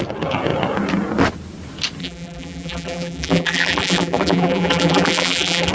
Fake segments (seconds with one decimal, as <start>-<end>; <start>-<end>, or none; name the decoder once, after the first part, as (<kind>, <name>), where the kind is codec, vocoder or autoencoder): 2.0-5.7 (vocoder, BigVGAN v2)